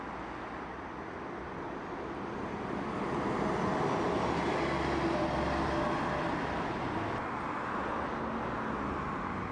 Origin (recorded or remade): recorded